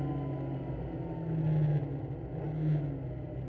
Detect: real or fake real